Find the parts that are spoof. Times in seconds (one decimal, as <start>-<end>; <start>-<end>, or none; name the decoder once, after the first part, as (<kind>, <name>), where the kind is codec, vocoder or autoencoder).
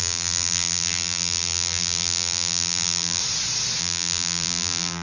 0.0-3.2 (vocoder, BigVGAN v2); 3.8-5.0